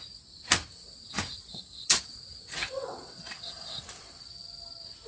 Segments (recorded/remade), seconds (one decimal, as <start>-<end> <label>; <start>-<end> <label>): 0.0-0.7 recorded; 0.7-3.8 remade; 3.8-5.1 recorded